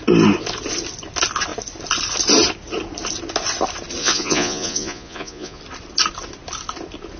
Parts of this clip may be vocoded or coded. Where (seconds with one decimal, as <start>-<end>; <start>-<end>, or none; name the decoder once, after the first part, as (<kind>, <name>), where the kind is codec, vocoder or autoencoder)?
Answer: 4.0-5.6 (vocoder, Vocos)

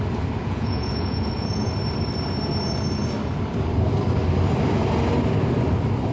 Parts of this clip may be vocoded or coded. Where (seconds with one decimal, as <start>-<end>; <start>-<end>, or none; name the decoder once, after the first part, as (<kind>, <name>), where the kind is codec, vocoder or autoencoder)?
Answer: 0.4-1.7 (vocoder, Vocos)

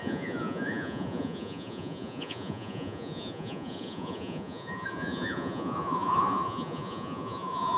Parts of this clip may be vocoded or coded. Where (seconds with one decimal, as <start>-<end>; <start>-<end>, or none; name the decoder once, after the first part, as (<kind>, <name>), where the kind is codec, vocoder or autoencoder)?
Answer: 0.0-7.8 (vocoder, Vocos)

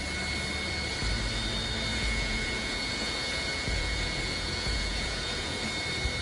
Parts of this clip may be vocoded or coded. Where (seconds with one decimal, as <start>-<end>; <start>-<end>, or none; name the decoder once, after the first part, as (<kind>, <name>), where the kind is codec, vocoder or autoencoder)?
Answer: 1.9-5.6 (vocoder, Vocos)

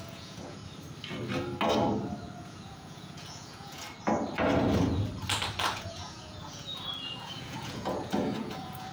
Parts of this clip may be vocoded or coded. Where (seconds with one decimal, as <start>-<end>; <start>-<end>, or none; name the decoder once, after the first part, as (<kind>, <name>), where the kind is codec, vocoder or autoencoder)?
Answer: 0.0-0.6 (vocoder, Vocos); 2.4-3.8; 5.7-8.9

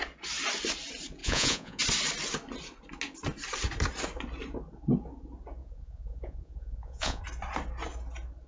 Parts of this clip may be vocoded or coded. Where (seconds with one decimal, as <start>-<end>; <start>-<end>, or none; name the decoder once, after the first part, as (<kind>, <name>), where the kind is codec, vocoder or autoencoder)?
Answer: 1.2-1.8 (vocoder, Vocos); 5.6-7.2